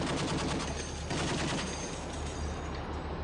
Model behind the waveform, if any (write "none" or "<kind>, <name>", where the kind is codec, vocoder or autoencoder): none